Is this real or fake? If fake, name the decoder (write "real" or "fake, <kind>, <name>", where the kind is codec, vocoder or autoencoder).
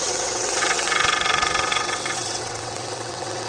fake, vocoder, WaveNeXt